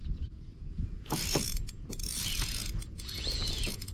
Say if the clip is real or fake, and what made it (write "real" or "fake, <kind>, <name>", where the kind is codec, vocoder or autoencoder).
fake, vocoder, Vocos